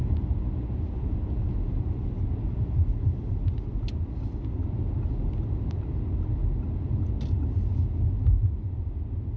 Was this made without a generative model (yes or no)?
yes